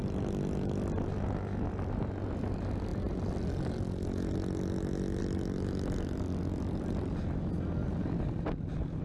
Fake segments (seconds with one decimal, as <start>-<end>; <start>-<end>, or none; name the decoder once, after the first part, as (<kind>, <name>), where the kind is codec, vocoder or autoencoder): none

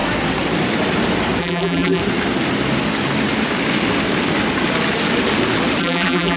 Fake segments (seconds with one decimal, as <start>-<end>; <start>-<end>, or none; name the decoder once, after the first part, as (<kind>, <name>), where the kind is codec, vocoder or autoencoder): 1.4-2.0 (vocoder, BigVGAN v2); 5.8-6.4

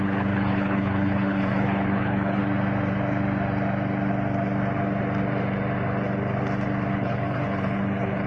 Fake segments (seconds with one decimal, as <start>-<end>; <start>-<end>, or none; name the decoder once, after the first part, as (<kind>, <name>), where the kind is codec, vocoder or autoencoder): 0.0-2.4 (codec, HILCodec); 6.9-8.3

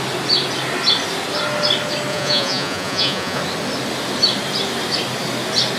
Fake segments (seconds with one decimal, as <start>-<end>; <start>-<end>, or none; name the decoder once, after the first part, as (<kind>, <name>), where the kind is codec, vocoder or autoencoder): 2.1-3.4 (vocoder, Vocos)

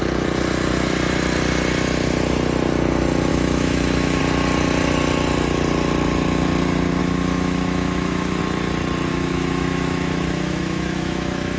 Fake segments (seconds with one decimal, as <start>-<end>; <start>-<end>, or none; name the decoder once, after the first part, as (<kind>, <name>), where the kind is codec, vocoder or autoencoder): 3.3-4.2 (autoencoder, DAC-VAE); 7.0-8.4; 9.1-11.6